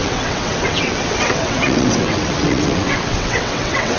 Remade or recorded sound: remade